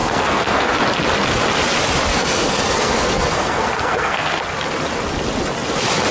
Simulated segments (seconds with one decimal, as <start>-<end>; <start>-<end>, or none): 0.0-0.8; 2.1-4.4